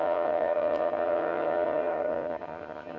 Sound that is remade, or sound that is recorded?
remade